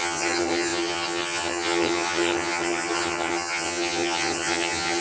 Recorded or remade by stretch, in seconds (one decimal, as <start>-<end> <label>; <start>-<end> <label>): 0.0-5.0 remade